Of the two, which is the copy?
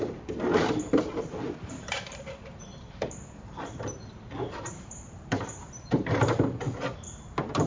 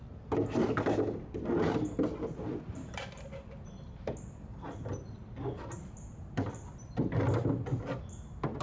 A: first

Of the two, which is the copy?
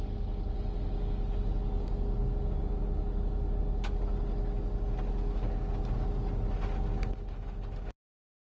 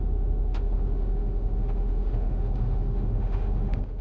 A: second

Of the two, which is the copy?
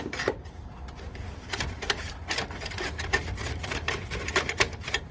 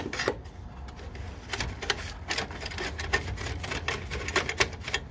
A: first